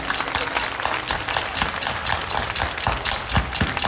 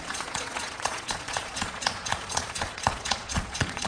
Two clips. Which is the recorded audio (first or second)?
first